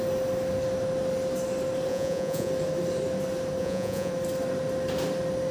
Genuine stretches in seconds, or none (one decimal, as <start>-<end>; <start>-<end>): 0.0-1.9; 2.5-3.6; 4.1-5.5